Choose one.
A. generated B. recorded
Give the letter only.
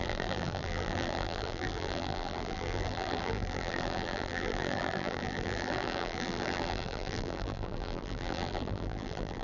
A